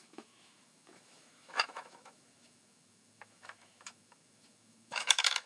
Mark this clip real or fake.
fake